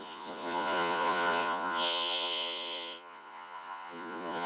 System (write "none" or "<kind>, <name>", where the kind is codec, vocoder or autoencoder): vocoder, Vocos